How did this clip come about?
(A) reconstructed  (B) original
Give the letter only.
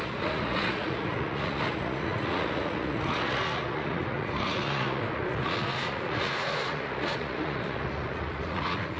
A